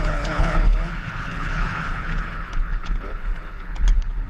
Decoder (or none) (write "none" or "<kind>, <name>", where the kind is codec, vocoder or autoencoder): codec, HILCodec